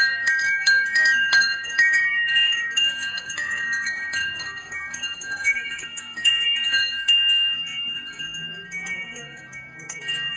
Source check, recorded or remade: remade